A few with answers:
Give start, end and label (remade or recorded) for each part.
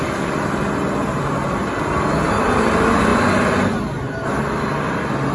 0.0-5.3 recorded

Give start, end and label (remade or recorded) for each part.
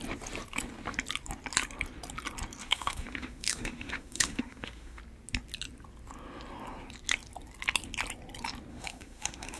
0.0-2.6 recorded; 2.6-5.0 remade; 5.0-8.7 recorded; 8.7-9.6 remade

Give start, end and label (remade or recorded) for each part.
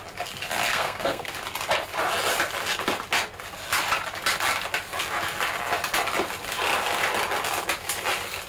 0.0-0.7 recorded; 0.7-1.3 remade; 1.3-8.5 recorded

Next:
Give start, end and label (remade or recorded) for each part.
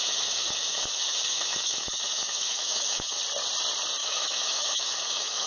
0.0-3.2 remade; 3.2-4.0 recorded; 4.0-5.5 remade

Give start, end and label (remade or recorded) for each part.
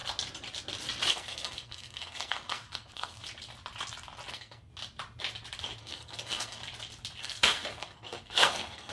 0.0-1.1 recorded; 1.1-3.2 remade; 3.2-4.3 recorded; 4.3-4.7 remade; 4.7-5.8 recorded; 5.8-6.6 remade; 6.6-7.2 recorded; 7.2-8.9 remade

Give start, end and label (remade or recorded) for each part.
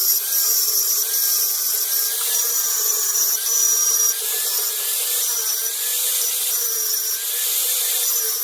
0.0-1.0 recorded; 1.0-4.1 remade; 4.1-8.4 recorded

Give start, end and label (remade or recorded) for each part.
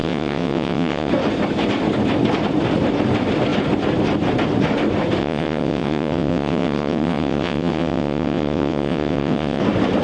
0.0-1.1 remade; 1.1-5.2 recorded; 5.2-9.6 remade; 9.6-10.0 recorded